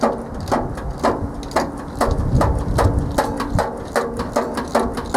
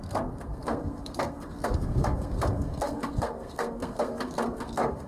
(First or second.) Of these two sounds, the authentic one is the first